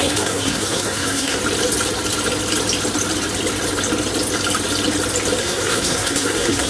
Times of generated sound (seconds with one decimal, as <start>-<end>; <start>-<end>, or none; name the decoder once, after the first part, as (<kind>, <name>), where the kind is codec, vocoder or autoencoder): 0.0-1.4 (codec, SNAC); 5.4-6.7